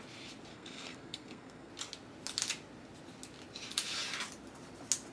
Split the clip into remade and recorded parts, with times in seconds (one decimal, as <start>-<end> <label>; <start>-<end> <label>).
0.0-0.5 recorded; 0.5-1.7 remade; 1.7-5.1 recorded